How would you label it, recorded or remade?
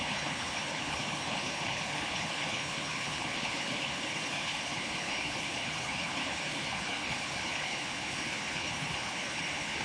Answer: remade